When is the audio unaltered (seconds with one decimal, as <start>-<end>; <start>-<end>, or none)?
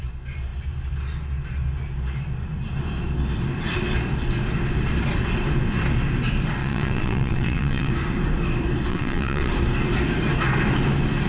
0.0-6.6; 7.9-8.9; 9.5-11.3